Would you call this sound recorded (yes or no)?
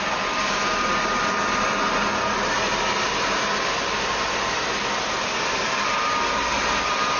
yes